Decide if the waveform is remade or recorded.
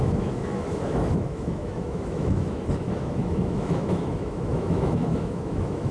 remade